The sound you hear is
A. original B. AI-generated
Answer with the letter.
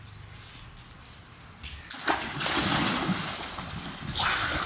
A